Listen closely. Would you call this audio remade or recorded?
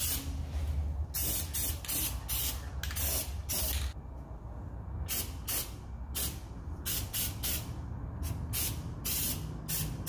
recorded